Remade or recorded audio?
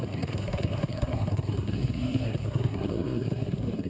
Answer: remade